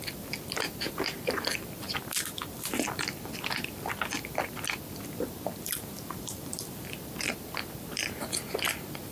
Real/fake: fake